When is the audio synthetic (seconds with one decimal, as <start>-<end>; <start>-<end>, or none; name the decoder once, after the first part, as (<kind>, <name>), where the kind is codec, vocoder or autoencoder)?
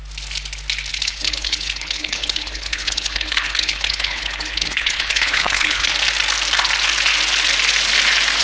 0.9-5.9 (codec, HILCodec)